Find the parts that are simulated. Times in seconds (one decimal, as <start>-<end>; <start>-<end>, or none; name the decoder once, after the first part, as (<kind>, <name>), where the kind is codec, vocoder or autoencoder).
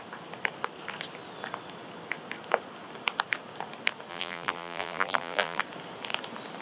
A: 4.1-5.6 (vocoder, BigVGAN v2)